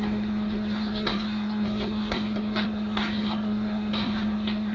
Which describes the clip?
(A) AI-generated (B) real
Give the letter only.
A